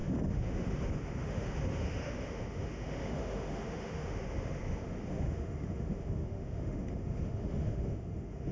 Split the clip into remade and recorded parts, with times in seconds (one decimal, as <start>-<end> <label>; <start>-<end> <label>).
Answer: 0.0-8.5 remade